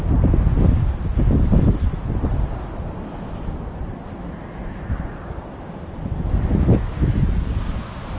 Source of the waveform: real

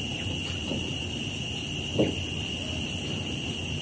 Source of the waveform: real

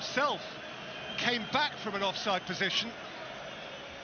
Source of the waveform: real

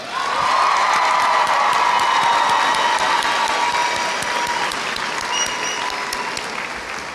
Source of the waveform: real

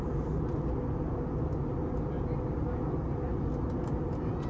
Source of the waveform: real